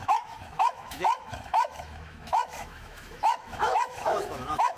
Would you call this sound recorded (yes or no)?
no